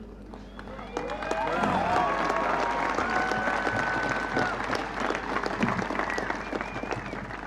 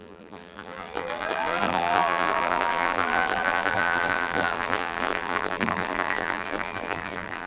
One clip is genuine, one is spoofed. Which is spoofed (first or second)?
second